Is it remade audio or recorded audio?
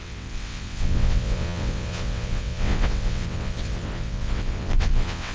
remade